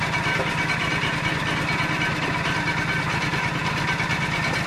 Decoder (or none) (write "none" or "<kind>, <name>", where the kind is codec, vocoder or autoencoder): none